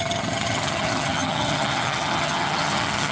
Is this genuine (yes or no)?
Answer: no